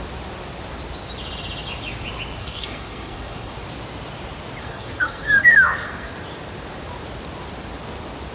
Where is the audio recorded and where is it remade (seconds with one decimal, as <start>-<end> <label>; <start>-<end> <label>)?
0.0-2.4 recorded; 2.4-3.5 remade; 3.5-4.6 recorded; 4.6-6.1 remade; 6.1-8.3 recorded

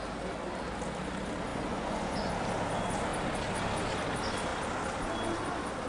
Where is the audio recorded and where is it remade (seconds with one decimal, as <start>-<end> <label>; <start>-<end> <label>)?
0.0-1.5 recorded; 1.5-2.3 remade; 2.3-5.9 recorded

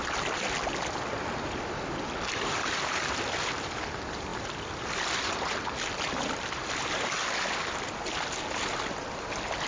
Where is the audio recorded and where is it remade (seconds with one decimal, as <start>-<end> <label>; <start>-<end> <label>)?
0.0-9.7 recorded

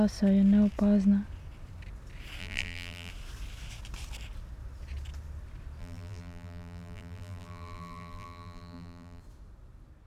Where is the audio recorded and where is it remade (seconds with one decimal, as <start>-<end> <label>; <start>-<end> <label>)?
0.0-2.4 recorded; 2.4-3.1 remade; 3.1-5.8 recorded; 5.8-9.2 remade; 9.2-10.1 recorded